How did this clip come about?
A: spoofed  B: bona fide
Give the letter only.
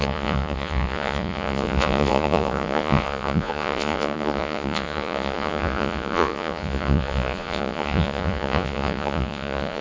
A